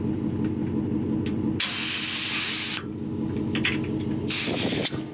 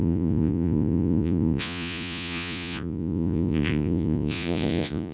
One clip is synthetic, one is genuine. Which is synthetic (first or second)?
second